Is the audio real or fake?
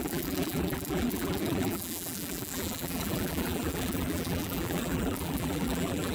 fake